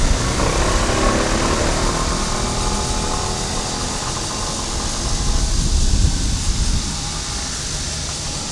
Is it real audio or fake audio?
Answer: real